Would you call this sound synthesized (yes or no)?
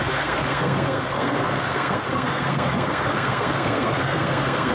yes